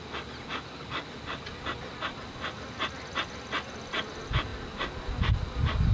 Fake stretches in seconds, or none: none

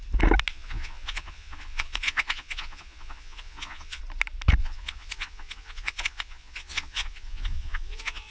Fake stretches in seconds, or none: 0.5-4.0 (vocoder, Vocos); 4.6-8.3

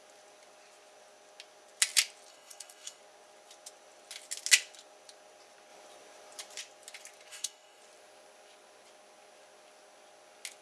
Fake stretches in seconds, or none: 2.3-3.0 (codec, DAC); 7.3-7.8